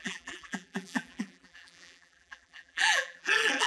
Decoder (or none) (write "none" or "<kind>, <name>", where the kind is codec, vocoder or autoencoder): vocoder, BigVGAN v2